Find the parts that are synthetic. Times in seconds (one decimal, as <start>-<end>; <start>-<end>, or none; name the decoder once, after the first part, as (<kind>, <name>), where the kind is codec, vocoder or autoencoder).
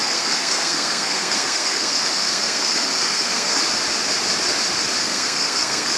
0.0-3.6 (codec, SNAC); 5.0-6.0